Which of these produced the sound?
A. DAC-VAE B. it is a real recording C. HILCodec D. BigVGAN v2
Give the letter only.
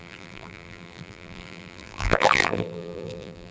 D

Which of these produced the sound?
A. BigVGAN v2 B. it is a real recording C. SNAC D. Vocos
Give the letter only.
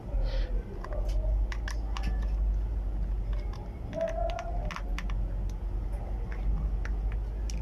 B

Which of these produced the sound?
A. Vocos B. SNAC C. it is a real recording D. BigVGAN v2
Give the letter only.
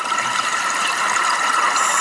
D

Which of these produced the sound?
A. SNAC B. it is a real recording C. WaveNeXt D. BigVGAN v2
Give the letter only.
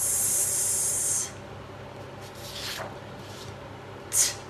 B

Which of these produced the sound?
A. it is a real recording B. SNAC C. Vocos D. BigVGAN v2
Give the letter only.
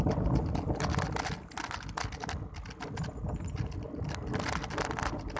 A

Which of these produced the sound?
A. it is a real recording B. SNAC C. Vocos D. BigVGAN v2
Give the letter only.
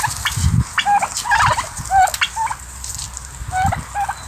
A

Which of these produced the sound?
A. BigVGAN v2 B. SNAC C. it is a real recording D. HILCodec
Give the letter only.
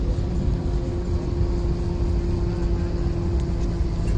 C